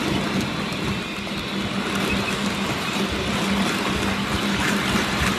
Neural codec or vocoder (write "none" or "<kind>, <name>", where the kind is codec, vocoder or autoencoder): none